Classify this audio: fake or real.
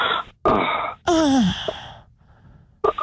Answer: real